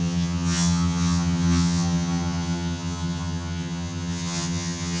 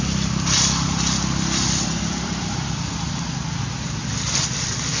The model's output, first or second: first